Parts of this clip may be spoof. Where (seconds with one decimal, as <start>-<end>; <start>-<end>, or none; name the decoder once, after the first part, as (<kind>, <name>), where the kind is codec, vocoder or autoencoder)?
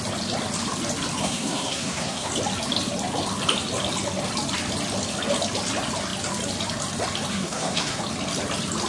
1.2-2.3 (codec, SNAC); 7.3-8.0